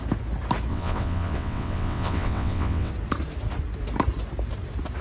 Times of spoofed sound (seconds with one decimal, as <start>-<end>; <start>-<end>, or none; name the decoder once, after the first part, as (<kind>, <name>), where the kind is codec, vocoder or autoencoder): 0.7-2.9 (vocoder, WaveNeXt)